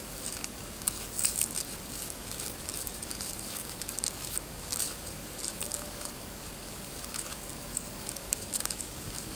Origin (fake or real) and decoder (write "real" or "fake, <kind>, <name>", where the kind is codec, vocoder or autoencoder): fake, codec, DAC